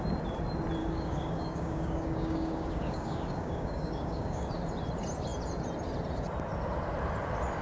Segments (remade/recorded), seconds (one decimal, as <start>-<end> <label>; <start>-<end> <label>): 0.0-0.8 recorded; 0.8-4.5 remade; 4.5-7.6 recorded